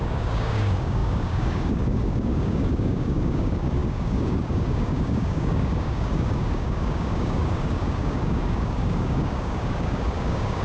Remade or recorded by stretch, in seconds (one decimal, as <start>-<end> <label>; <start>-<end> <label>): 0.0-10.6 remade